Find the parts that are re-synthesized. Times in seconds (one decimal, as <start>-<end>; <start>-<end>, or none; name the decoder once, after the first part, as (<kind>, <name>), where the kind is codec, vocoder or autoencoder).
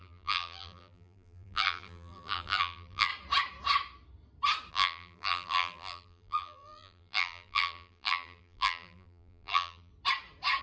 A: 0.0-3.1 (vocoder, BigVGAN v2); 4.7-9.9